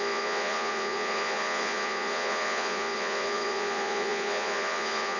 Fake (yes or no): yes